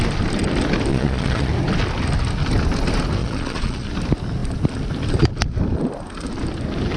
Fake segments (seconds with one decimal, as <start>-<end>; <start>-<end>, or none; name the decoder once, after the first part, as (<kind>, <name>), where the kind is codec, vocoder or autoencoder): 0.9-1.5 (vocoder, Vocos); 3.2-3.9